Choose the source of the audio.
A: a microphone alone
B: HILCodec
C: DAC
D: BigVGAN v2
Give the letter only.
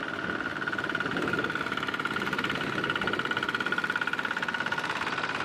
A